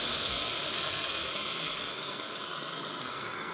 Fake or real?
fake